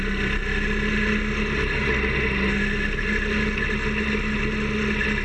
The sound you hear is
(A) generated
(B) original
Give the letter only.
B